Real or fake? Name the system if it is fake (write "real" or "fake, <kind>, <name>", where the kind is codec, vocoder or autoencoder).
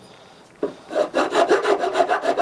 fake, vocoder, BigVGAN v2